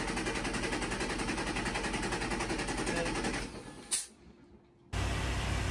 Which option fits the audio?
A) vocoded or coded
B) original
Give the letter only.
B